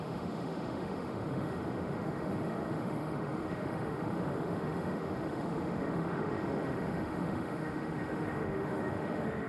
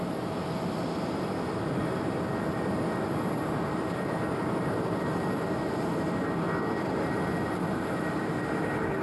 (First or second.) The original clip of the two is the second